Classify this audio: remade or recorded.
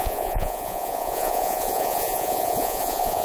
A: remade